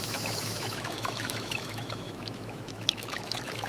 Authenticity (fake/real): fake